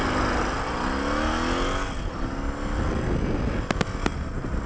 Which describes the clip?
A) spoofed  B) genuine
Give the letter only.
B